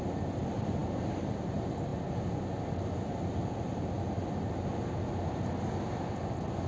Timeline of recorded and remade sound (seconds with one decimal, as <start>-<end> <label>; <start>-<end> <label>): 0.0-6.7 recorded